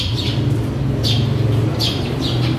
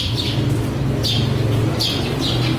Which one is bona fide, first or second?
second